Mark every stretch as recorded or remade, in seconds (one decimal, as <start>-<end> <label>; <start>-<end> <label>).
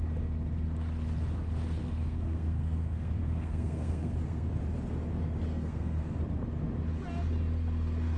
0.0-1.8 recorded; 1.8-4.6 remade; 4.6-5.5 recorded; 5.5-6.2 remade; 6.2-8.2 recorded